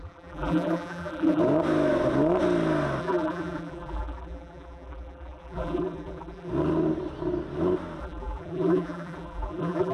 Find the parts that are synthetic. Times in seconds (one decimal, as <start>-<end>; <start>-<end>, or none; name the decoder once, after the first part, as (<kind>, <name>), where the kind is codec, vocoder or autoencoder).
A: 0.0-1.4 (vocoder, BigVGAN v2); 3.0-6.5; 8.0-9.9